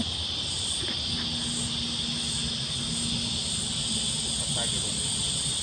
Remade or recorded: recorded